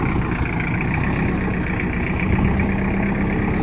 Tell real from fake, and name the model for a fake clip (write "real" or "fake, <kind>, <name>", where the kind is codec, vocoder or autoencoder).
real